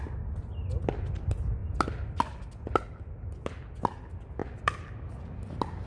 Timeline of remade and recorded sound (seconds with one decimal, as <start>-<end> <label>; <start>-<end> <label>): 0.0-4.4 recorded; 4.4-5.0 remade; 5.0-5.9 recorded